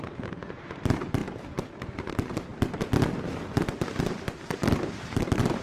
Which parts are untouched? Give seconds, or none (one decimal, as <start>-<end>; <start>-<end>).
1.2-1.8; 2.5-4.0